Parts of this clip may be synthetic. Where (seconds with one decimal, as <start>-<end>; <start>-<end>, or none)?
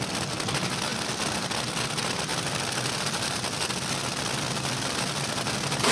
none